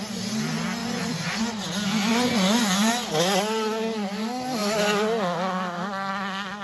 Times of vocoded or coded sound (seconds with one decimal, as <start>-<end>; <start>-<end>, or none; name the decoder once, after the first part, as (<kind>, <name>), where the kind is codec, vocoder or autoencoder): 0.8-1.4 (vocoder, Vocos); 2.1-2.9